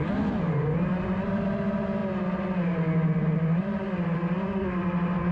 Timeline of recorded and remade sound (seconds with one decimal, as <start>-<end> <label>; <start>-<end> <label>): 0.0-5.3 recorded